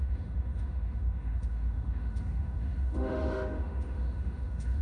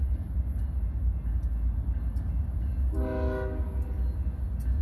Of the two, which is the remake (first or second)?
first